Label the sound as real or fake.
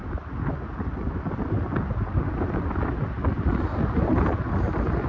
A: real